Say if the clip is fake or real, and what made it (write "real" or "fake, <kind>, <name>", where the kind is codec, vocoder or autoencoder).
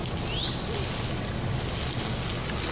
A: real